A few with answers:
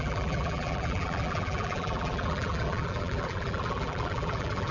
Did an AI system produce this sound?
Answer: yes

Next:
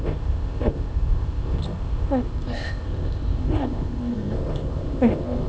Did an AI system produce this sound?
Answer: yes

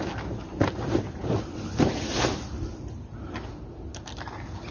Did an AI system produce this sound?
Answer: no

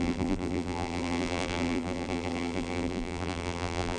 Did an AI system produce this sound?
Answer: yes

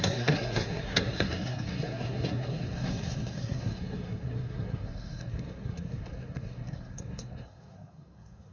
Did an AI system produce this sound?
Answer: yes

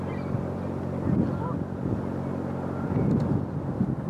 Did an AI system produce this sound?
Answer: no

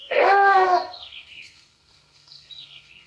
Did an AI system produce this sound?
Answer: yes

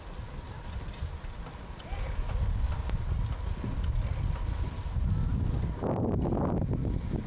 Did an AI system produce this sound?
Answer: no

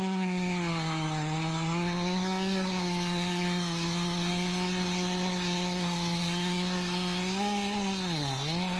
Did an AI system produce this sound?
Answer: yes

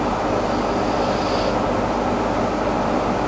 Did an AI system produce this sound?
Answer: no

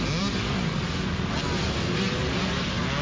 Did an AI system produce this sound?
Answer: no